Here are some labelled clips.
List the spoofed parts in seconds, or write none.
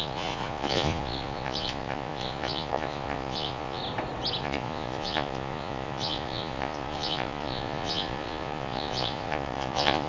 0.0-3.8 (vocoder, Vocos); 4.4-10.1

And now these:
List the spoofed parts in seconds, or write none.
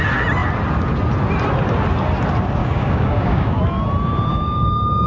2.6-3.6 (codec, DAC); 4.3-5.1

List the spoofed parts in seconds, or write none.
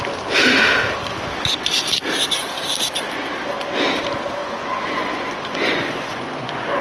4.4-6.8 (vocoder, Vocos)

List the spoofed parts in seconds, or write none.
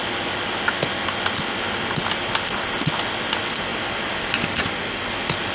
3.7-5.1 (vocoder, BigVGAN v2)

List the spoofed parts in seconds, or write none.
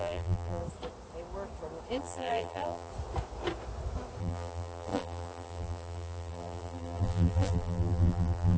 0.0-0.6 (vocoder, BigVGAN v2); 2.0-2.9; 4.2-8.6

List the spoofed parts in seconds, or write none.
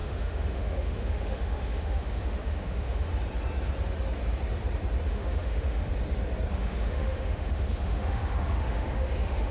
0.0-3.1 (autoencoder, DAC-VAE); 5.1-5.9; 6.5-9.5